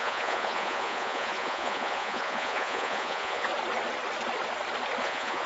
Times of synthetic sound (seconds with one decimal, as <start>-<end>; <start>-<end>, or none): 0.0-3.5; 5.0-5.5